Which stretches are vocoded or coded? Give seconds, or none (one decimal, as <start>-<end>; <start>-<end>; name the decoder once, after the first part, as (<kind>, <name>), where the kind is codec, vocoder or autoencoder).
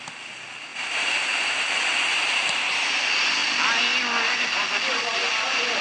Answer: 0.7-1.6 (vocoder, BigVGAN v2); 2.1-3.0